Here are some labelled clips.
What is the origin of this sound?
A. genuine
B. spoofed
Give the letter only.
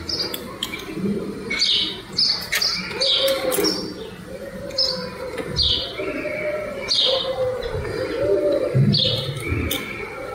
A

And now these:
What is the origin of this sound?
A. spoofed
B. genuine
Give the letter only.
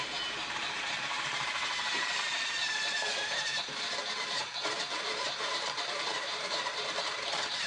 A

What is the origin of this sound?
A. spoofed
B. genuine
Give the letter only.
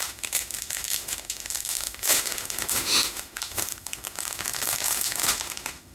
A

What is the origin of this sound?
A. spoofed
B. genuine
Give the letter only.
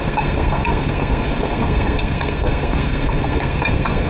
A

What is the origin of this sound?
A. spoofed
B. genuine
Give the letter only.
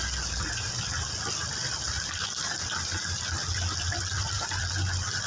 B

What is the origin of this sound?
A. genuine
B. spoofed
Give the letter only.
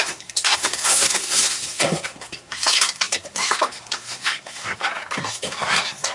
B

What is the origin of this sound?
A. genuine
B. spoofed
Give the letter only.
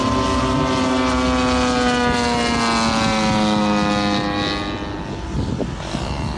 A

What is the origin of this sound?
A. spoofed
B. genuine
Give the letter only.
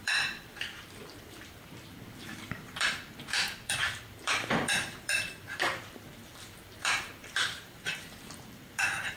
A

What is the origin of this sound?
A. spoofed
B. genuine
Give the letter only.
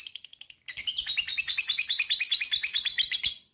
B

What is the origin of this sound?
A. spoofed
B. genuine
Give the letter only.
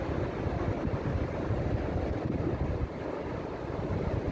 B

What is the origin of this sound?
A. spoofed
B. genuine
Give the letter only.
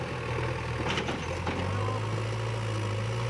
B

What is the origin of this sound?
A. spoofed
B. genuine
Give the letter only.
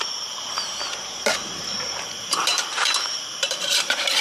A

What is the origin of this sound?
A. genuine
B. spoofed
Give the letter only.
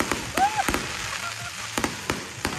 A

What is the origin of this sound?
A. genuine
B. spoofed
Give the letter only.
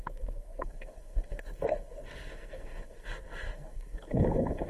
B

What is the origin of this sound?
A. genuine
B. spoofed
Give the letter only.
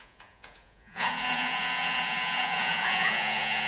B